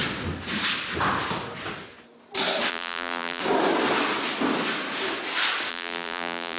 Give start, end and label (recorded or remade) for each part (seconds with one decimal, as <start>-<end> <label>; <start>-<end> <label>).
0.0-2.7 recorded; 2.7-3.4 remade; 3.4-5.7 recorded; 5.7-6.6 remade